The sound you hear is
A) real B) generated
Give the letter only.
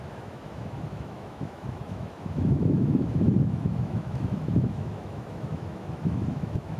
B